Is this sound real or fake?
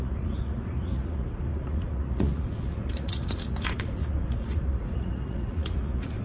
fake